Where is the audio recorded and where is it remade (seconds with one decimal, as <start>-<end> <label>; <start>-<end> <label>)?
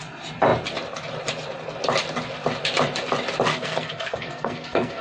0.0-3.5 recorded; 3.5-5.0 remade